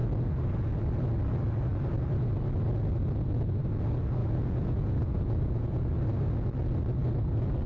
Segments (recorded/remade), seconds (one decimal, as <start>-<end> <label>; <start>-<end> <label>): 0.0-4.2 recorded; 4.2-5.9 remade; 5.9-7.7 recorded